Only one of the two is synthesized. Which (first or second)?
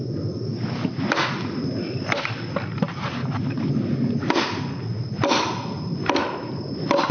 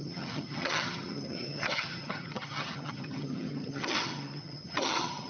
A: second